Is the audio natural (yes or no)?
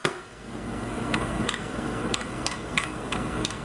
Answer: no